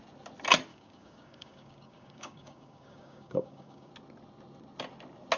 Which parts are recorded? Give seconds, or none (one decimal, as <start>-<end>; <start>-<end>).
0.0-0.7; 3.9-5.4